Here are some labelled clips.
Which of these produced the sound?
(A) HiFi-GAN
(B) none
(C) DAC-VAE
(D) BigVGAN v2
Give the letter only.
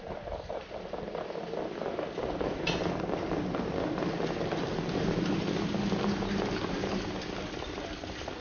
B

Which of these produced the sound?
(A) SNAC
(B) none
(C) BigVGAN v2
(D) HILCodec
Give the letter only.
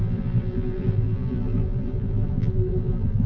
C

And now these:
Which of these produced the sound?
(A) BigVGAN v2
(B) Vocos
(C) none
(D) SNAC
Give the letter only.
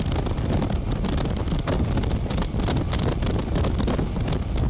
C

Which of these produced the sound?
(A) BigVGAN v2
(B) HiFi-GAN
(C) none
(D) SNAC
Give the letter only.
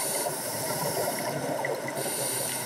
A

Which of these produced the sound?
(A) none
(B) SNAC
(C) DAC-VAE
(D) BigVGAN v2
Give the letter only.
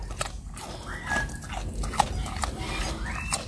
A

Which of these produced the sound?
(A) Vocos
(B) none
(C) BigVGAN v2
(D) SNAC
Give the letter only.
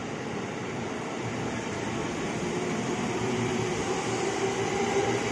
C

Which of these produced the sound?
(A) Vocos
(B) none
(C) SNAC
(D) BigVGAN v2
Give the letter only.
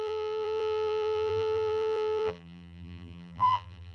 D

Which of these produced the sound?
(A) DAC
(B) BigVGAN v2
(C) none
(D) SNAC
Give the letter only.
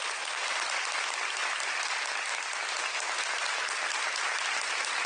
C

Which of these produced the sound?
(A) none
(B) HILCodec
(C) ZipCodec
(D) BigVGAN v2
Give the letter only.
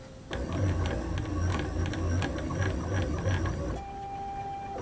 A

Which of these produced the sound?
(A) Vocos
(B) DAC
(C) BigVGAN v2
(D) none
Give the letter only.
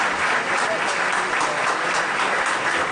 D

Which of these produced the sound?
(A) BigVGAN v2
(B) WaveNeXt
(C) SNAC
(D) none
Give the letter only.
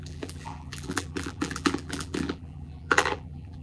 A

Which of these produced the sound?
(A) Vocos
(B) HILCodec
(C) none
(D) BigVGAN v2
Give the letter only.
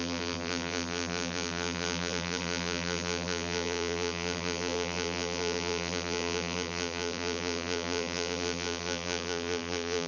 D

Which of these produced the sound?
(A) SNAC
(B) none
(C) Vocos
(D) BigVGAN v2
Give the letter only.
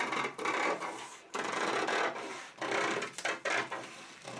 B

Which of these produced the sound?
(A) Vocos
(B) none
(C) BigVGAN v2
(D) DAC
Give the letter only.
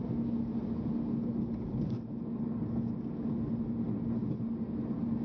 B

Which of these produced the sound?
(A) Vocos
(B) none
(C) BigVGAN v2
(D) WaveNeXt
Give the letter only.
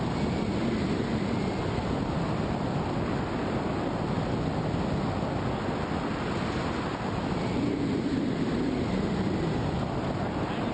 B